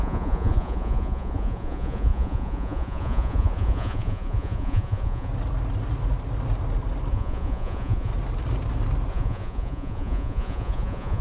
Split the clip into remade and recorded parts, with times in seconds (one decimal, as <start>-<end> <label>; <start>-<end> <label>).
0.0-5.3 remade; 5.3-7.1 recorded; 7.1-8.1 remade; 8.1-9.1 recorded; 9.1-11.2 remade